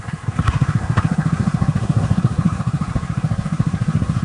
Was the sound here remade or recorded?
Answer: remade